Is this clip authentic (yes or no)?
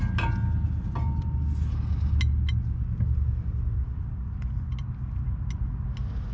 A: yes